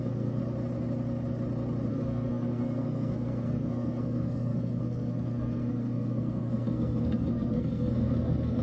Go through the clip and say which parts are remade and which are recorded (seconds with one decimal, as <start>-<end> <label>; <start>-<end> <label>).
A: 0.0-0.4 remade; 0.4-1.9 recorded; 1.9-8.6 remade